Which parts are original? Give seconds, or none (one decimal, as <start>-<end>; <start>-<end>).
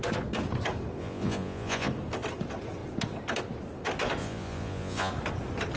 0.0-1.0; 1.9-4.2; 5.1-5.8